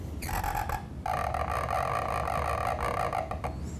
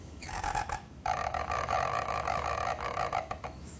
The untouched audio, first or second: first